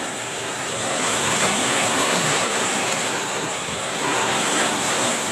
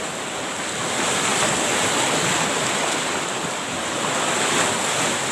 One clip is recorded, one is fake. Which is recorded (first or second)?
second